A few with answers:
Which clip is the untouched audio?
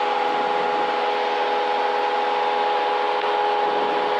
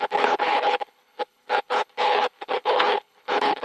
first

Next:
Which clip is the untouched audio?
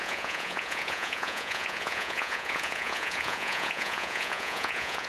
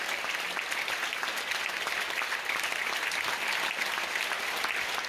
second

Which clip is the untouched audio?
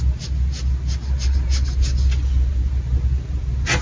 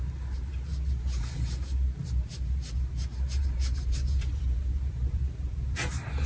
first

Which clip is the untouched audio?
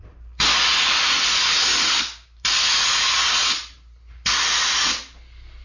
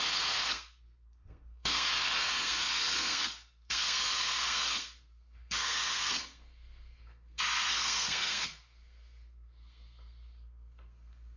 first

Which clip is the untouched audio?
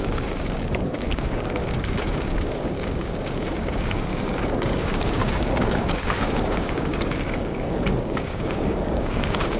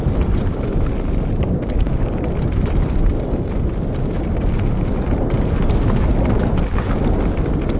second